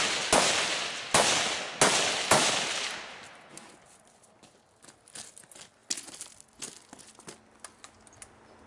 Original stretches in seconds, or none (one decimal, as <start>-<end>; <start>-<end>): 0.0-8.7